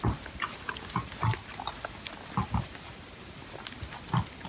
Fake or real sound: real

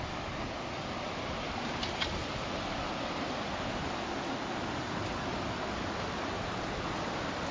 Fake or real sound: real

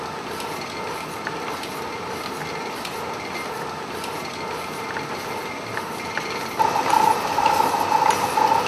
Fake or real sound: real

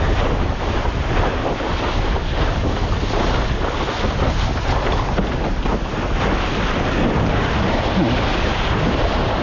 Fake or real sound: real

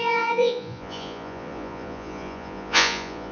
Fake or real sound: fake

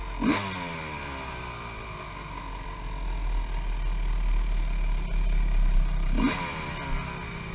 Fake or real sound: real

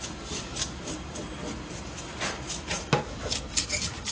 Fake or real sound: real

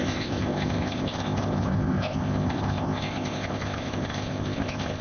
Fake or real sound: fake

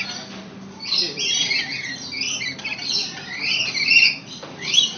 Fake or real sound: real